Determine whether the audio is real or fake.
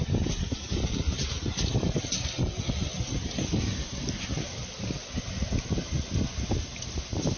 real